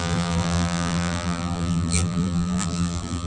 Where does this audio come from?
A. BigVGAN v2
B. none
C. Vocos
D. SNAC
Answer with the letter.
A